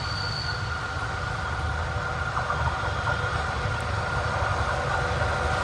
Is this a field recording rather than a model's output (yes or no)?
yes